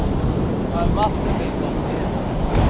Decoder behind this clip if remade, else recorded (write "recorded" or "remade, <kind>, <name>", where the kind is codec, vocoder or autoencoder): recorded